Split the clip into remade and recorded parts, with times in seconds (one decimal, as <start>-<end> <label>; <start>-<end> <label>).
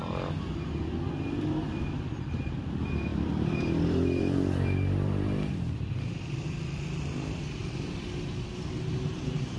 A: 0.0-3.1 recorded; 3.1-7.0 remade; 7.0-7.6 recorded; 7.6-8.2 remade; 8.2-9.6 recorded